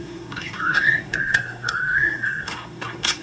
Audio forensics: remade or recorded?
remade